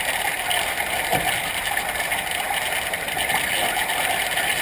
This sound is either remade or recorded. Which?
remade